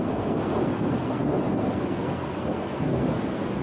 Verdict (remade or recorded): remade